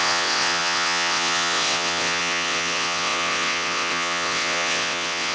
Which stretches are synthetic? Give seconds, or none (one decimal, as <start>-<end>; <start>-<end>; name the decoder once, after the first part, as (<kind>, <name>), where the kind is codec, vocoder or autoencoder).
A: 0.0-5.3 (vocoder, WaveNeXt)